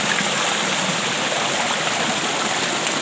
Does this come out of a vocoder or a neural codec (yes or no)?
no